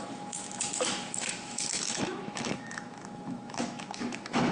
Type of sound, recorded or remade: remade